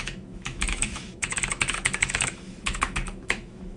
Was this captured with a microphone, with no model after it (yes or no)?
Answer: no